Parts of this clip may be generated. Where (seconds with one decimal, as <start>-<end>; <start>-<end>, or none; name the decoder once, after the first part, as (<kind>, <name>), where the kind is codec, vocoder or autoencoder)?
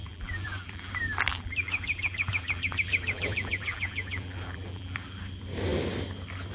0.0-0.9 (vocoder, BigVGAN v2); 1.3-5.2